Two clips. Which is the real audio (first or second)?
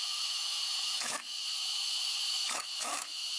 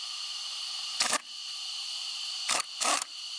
second